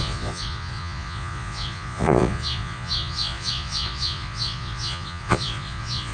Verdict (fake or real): fake